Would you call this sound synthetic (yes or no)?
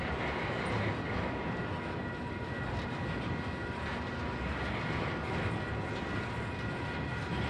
no